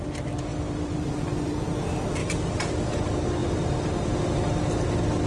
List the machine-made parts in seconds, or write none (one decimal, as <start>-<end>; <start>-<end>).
0.5-1.6; 2.2-2.9; 3.4-4.0